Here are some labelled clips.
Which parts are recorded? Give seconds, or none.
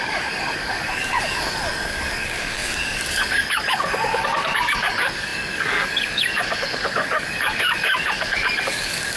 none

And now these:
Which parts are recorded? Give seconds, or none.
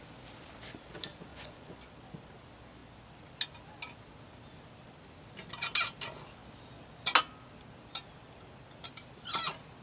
0.0-1.3; 1.9-9.8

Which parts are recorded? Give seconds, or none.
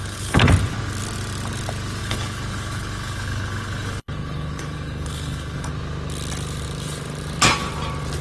0.5-2.0; 5.7-8.2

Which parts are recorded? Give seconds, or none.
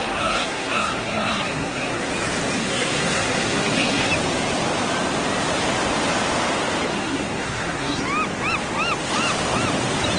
2.1-2.6; 4.1-6.9; 8.0-10.2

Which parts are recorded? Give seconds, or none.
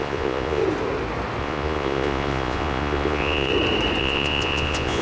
0.6-1.4; 3.5-4.0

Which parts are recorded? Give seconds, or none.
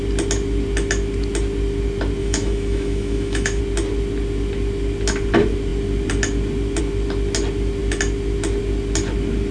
0.0-2.2; 3.6-9.5